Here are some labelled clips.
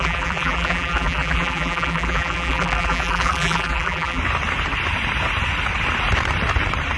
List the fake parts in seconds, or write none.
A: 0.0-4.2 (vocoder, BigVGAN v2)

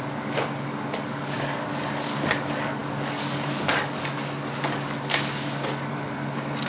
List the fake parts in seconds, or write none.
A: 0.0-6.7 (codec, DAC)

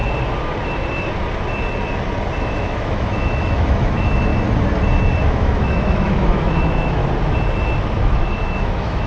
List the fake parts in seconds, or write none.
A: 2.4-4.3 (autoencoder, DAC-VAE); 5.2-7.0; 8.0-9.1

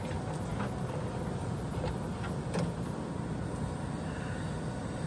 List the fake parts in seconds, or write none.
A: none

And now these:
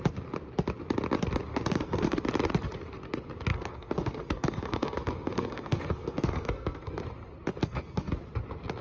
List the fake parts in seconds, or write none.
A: 1.5-2.2 (codec, SNAC); 3.5-7.0; 7.6-8.1

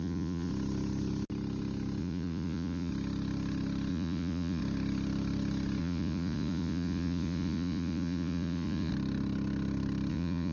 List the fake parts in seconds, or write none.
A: 0.0-0.5 (vocoder, Vocos); 2.0-2.9; 3.9-4.6; 5.8-8.9; 10.1-10.5